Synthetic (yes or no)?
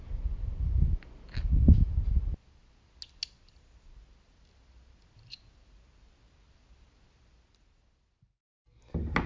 no